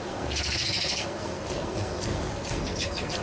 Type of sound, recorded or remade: remade